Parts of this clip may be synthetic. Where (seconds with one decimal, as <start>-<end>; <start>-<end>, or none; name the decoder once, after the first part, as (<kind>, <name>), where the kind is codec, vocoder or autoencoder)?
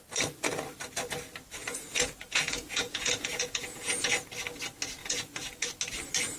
1.6-4.1 (vocoder, Vocos); 5.0-5.7